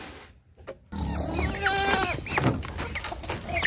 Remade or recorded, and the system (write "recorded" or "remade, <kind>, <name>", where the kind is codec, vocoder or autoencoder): recorded